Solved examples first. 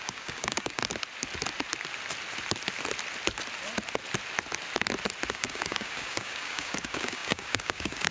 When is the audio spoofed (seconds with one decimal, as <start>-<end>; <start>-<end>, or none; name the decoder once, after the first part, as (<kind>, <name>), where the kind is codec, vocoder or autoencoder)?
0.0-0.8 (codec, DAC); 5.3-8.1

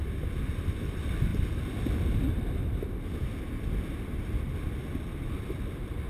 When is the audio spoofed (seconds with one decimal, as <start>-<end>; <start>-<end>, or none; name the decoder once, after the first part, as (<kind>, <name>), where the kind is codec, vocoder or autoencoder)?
none

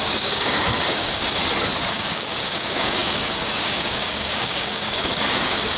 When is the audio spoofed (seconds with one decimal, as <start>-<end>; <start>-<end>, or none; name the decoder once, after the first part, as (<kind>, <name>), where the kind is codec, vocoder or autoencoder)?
0.0-1.4 (codec, DAC); 1.9-5.8

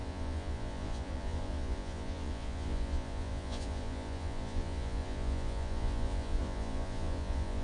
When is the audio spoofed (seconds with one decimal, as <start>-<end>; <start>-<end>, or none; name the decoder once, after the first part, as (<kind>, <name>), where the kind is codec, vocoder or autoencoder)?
0.0-7.6 (vocoder, Vocos)

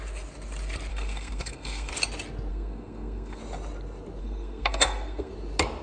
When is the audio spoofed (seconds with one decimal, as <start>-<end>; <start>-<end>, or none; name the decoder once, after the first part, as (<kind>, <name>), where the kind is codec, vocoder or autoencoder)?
0.9-1.9 (codec, SNAC); 2.5-3.4; 4.2-5.3

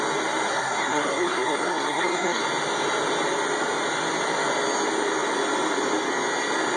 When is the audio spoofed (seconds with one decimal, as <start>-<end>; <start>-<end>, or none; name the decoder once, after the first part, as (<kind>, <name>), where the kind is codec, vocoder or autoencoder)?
0.5-2.4 (codec, SNAC)

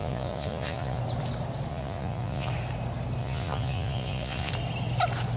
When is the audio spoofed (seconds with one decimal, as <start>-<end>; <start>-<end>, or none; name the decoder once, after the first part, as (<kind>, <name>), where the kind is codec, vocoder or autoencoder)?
0.0-1.0 (vocoder, Vocos); 1.7-2.5; 3.2-4.5